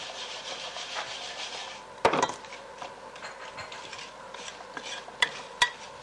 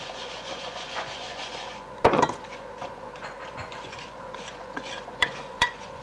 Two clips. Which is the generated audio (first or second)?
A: second